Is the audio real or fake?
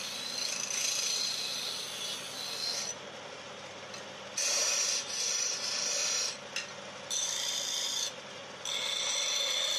real